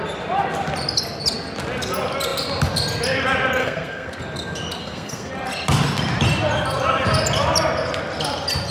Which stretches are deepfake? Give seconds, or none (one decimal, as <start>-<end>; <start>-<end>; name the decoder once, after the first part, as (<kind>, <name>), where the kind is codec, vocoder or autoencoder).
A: 3.6-4.2 (codec, SNAC); 4.8-5.3